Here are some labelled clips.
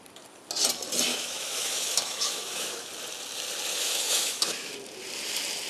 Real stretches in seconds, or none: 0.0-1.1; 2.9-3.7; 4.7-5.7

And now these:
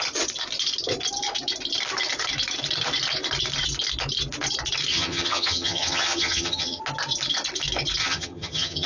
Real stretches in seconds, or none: 0.0-4.9; 6.8-8.0

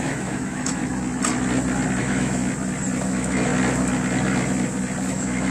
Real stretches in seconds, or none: 0.8-2.0; 2.4-3.0; 3.5-5.1